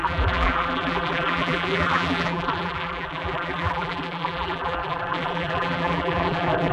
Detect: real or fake fake